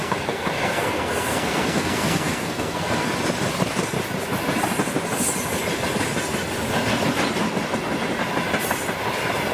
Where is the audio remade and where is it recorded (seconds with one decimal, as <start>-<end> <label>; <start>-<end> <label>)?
0.0-3.1 remade; 3.1-9.5 recorded